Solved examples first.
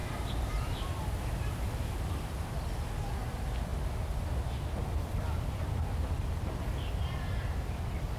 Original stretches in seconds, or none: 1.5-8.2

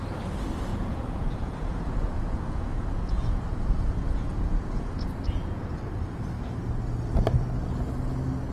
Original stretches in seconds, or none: 0.0-0.7; 5.7-8.5

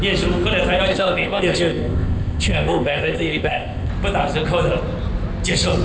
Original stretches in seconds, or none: 0.0-0.9; 3.9-5.8

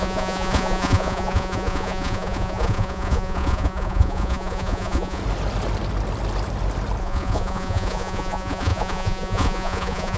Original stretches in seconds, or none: 5.2-7.0

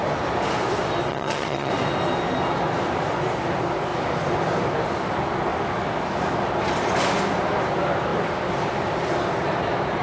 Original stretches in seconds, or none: 0.0-1.1; 1.7-10.0